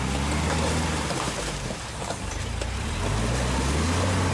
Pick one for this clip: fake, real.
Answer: real